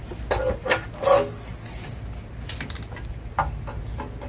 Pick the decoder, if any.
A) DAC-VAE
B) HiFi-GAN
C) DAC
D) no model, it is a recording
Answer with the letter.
D